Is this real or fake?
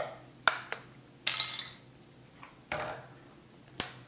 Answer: real